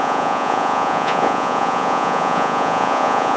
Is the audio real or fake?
fake